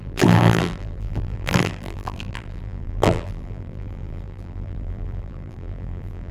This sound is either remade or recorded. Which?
remade